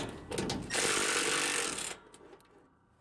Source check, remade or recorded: recorded